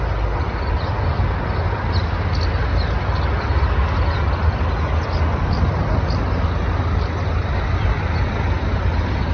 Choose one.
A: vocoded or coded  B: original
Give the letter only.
B